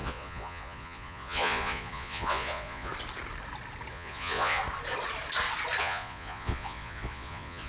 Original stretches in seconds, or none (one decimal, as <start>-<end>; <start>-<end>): 2.9-3.9; 4.6-5.8